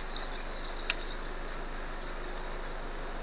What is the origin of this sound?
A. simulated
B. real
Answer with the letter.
B